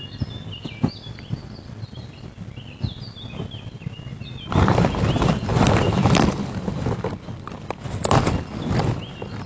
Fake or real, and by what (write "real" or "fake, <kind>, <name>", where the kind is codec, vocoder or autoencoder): real